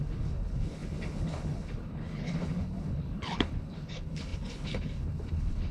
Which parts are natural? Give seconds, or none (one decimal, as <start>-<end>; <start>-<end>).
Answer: none